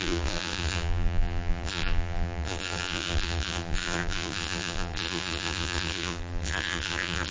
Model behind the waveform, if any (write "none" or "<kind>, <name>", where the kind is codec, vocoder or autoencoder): vocoder, BigVGAN v2